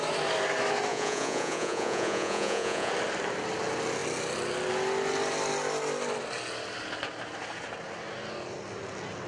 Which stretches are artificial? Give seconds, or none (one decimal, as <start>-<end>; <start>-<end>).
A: 0.9-2.9